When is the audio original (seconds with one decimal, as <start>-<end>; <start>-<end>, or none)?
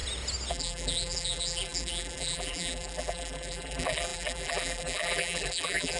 0.0-0.5